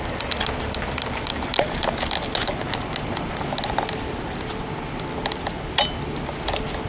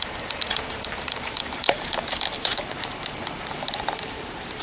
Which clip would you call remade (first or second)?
second